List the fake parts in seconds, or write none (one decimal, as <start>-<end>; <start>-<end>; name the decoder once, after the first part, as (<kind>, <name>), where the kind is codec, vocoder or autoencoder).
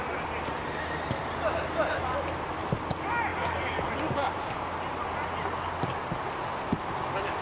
1.2-2.5 (vocoder, BigVGAN v2)